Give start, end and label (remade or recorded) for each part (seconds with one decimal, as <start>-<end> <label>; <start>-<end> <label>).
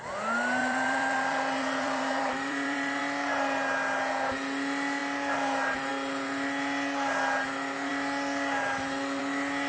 0.0-0.6 recorded; 0.6-3.0 remade; 3.0-9.7 recorded